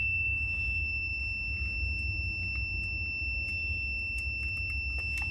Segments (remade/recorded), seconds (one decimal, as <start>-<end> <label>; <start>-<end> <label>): 0.0-1.2 remade; 1.2-5.3 recorded